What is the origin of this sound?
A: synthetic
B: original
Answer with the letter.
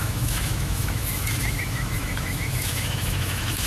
A